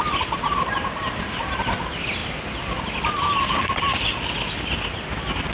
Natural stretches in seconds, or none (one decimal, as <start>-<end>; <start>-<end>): 0.0-5.5